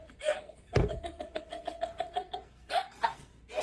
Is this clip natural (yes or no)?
no